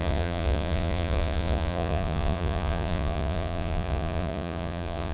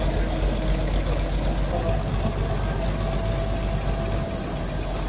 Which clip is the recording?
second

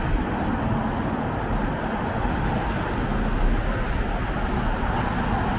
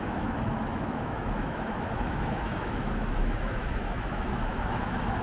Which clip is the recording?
first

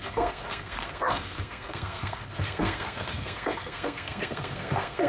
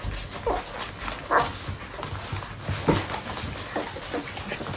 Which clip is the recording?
second